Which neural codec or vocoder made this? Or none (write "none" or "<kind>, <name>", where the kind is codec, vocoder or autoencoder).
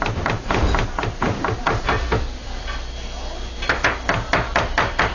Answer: none